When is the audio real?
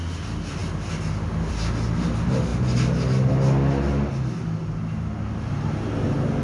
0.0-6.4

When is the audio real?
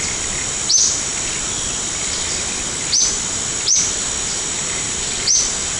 0.0-5.8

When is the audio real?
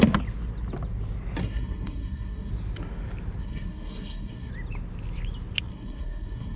0.0-1.4; 2.5-3.4; 4.5-5.7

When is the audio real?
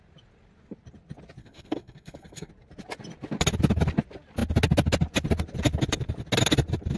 0.0-1.4; 2.5-7.0